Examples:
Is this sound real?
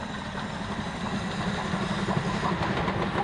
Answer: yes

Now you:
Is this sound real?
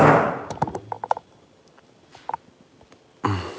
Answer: yes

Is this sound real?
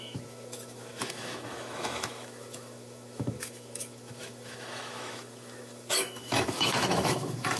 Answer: no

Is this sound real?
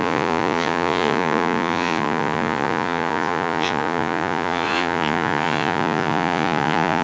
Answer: no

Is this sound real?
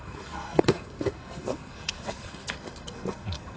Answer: no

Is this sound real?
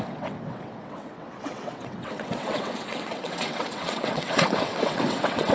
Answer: no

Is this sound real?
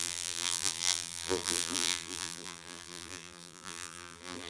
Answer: no